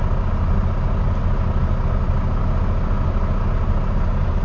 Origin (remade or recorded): recorded